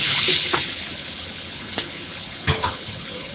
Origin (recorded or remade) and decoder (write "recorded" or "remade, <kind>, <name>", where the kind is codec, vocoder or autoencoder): remade, codec, HILCodec